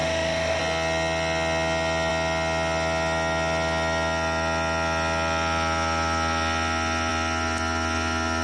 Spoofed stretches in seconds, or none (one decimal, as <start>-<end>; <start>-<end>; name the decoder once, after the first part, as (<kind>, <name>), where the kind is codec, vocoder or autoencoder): 0.0-0.6 (autoencoder, DAC-VAE)